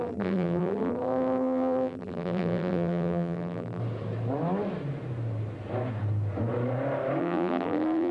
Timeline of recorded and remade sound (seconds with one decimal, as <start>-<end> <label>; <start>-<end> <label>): 0.0-3.8 remade; 3.8-7.2 recorded; 7.2-8.1 remade